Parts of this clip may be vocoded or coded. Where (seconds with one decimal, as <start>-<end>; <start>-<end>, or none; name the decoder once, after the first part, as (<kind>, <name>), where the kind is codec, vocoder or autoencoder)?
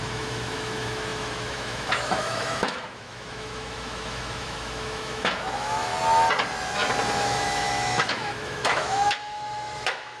0.0-5.9 (autoencoder, DAC-VAE); 7.1-10.2